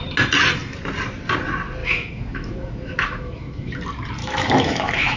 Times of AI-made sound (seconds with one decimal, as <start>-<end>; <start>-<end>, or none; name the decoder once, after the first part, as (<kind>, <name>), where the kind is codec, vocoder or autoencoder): 1.8-3.7 (autoencoder, DAC-VAE); 4.2-5.2

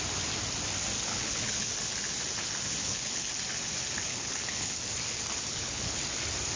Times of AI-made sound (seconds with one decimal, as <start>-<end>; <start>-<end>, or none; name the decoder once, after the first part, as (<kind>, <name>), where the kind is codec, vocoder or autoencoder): 1.1-1.7 (codec, HILCodec); 2.8-3.3; 4.1-4.8; 5.5-6.0

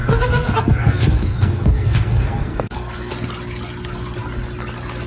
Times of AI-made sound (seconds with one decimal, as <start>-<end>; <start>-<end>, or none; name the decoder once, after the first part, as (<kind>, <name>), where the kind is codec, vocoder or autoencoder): 0.0-3.1 (codec, SNAC)